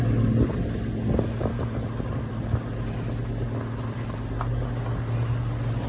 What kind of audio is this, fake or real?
real